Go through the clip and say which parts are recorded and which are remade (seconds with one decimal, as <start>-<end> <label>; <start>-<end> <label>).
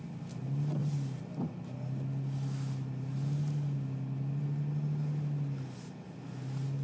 0.0-6.8 recorded